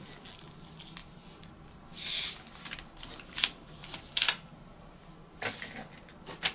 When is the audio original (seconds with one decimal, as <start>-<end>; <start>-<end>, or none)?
0.0-6.5